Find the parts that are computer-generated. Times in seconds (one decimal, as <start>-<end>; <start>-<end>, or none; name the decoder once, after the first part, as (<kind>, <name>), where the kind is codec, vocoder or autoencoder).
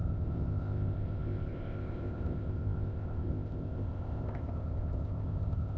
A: 0.0-5.8 (codec, ZipCodec)